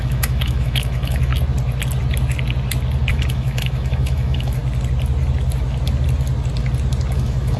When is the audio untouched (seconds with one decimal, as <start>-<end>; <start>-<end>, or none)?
1.3-3.1; 4.6-7.1